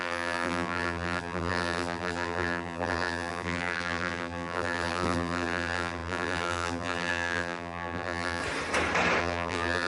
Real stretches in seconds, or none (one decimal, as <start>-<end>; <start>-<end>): 8.4-9.2